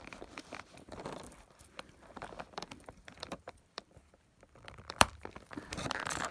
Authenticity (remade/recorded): remade